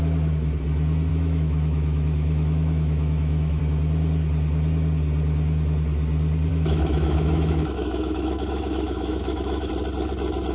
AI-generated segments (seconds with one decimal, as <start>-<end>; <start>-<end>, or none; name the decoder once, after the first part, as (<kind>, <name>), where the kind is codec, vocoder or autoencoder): 1.1-3.6 (autoencoder, DAC-VAE); 6.5-9.7